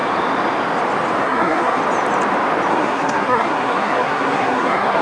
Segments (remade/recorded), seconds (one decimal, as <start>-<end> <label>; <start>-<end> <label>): 0.0-1.2 recorded; 1.2-1.8 remade; 1.8-2.7 recorded; 2.7-5.0 remade